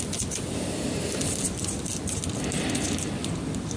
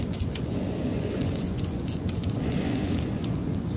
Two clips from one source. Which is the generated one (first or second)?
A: second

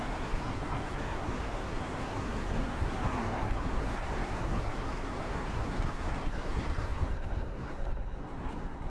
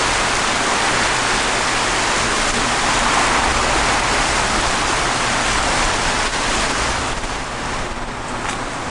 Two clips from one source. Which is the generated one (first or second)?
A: first